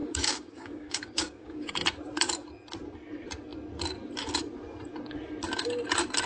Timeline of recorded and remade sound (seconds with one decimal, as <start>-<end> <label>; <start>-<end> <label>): 0.0-1.7 remade; 1.7-6.3 recorded

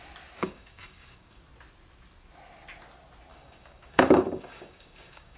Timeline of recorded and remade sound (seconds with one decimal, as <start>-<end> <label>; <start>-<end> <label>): 0.0-0.4 recorded; 0.4-1.4 remade; 1.4-3.3 recorded; 3.3-5.4 remade